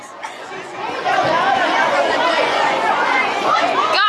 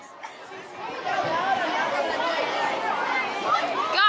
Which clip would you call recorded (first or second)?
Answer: second